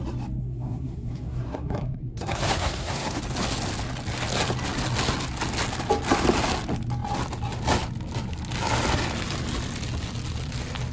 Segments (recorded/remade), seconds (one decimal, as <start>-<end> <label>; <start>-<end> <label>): 0.0-0.4 recorded; 0.4-3.2 remade; 3.2-10.9 recorded